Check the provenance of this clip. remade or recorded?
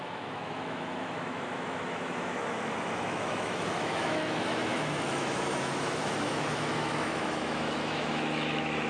remade